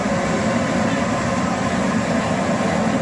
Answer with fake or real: real